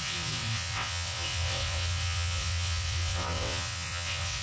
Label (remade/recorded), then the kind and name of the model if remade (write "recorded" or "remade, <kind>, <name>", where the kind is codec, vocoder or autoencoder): remade, vocoder, WaveNeXt